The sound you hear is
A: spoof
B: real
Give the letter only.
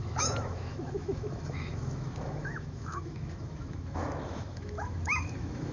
A